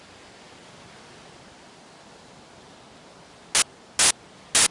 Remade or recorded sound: recorded